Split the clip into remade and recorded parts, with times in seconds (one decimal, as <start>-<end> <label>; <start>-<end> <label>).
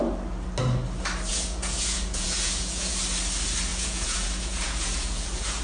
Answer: 0.0-1.3 recorded; 1.3-3.0 remade; 3.0-3.7 recorded; 3.7-5.6 remade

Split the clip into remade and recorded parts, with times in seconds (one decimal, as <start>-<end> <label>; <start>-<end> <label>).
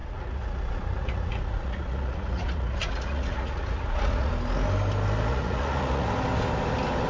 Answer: 0.0-4.3 remade; 4.3-5.3 recorded; 5.3-6.1 remade; 6.1-7.1 recorded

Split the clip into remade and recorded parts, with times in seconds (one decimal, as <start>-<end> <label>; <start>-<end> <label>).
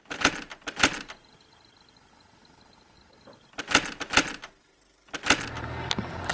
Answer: 0.0-6.3 recorded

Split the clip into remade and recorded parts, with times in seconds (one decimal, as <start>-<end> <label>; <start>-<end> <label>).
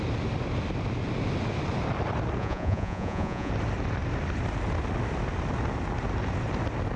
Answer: 0.0-2.4 recorded; 2.4-3.5 remade; 3.5-7.0 recorded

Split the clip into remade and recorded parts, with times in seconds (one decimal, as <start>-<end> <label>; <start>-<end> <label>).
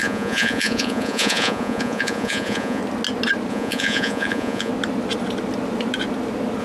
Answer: 0.0-2.8 remade; 2.8-3.5 recorded; 3.5-4.7 remade; 4.7-6.6 recorded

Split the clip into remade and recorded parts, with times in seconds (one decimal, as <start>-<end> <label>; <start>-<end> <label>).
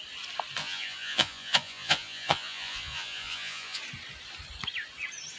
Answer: 0.0-0.6 recorded; 0.6-3.8 remade; 3.8-5.4 recorded